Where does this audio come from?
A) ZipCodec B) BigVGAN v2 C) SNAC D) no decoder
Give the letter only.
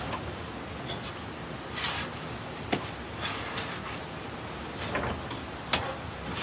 D